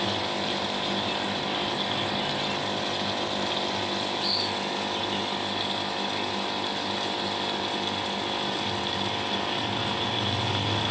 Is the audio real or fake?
real